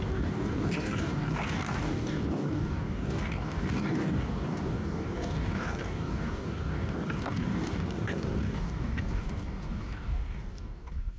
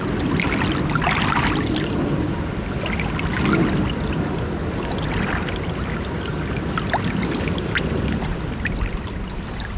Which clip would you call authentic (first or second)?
second